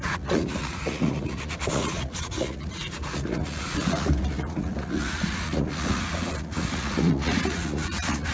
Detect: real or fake fake